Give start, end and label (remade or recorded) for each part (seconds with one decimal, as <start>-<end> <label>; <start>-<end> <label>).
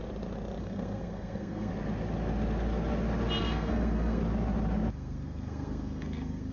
0.0-0.6 recorded; 0.6-1.7 remade; 1.7-3.4 recorded; 3.4-4.2 remade; 4.2-4.9 recorded; 4.9-6.5 remade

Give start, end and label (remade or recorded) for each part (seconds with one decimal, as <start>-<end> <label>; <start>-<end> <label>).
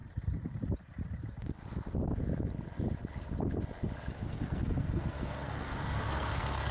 0.0-4.1 recorded; 4.1-6.7 remade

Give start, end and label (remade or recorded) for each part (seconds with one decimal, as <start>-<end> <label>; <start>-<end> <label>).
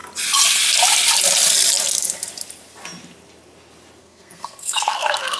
0.0-4.0 recorded; 4.0-5.4 remade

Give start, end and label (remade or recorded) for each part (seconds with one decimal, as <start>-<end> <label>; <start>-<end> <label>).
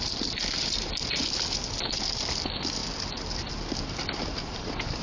0.0-5.0 recorded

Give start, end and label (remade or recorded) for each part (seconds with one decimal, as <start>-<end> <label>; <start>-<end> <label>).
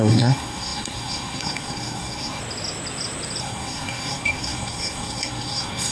0.0-2.4 remade; 2.4-3.4 recorded; 3.4-5.9 remade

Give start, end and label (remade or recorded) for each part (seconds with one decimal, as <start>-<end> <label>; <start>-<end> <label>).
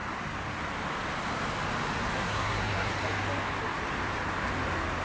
0.0-2.2 recorded; 2.2-2.9 remade; 2.9-5.0 recorded